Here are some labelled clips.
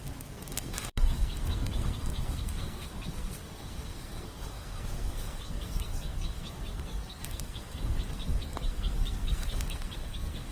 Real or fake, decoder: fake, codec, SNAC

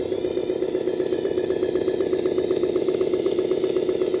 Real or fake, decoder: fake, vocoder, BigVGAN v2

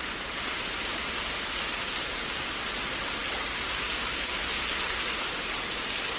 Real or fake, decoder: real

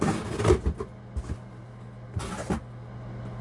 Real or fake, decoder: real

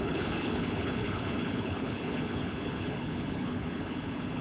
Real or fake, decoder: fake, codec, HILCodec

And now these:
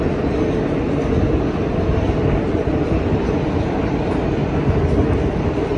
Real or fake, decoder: real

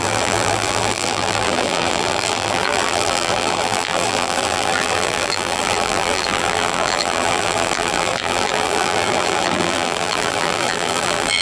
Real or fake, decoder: fake, vocoder, BigVGAN v2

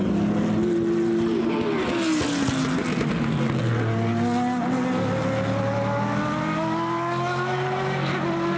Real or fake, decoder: real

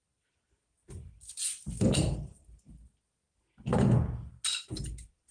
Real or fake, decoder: real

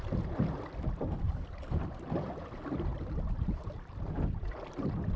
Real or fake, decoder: real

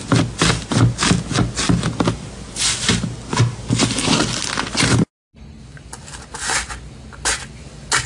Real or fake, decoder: real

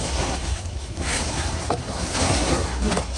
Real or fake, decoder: fake, codec, SNAC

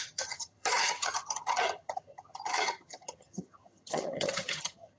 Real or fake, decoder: fake, vocoder, HiFi-GAN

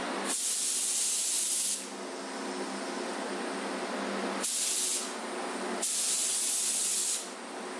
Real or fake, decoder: real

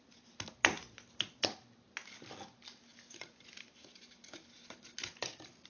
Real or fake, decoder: real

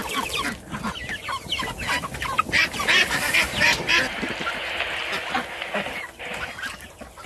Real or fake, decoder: real